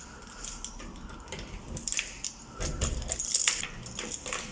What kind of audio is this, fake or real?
real